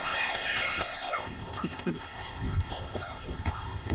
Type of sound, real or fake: fake